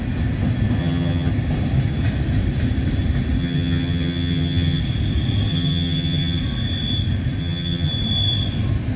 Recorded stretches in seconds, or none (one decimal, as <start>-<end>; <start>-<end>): 0.0-0.8; 1.3-3.4; 4.8-5.5; 6.4-7.4; 7.9-9.0